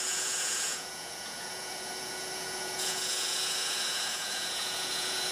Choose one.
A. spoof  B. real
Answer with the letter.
A